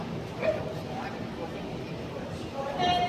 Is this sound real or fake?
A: real